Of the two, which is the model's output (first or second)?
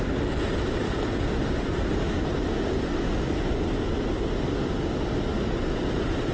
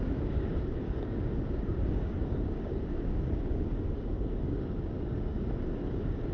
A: second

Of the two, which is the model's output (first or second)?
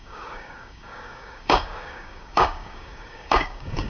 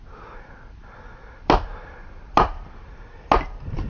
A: first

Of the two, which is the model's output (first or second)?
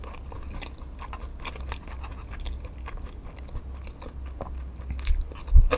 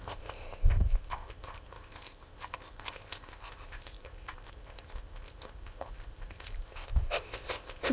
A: second